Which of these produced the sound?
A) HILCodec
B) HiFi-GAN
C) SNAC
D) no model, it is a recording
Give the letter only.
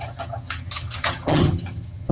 B